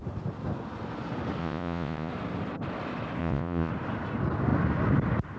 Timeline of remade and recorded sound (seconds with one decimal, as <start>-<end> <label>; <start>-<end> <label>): 0.0-1.4 recorded; 1.4-2.1 remade; 2.1-3.2 recorded; 3.2-3.7 remade; 3.7-5.4 recorded